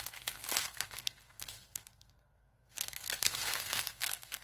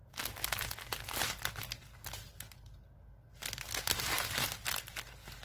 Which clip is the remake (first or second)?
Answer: first